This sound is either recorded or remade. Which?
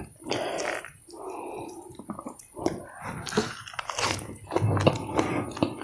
recorded